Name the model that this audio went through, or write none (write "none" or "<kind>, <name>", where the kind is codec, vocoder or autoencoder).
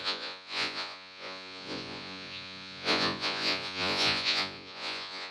vocoder, Vocos